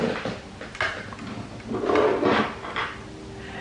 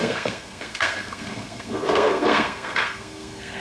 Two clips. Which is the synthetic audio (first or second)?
second